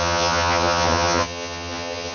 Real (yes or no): no